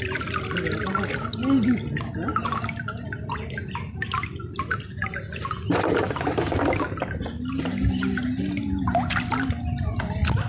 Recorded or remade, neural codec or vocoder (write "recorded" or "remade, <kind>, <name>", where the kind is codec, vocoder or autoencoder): recorded